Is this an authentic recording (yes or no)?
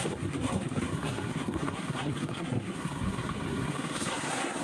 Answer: no